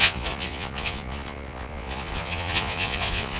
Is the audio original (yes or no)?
no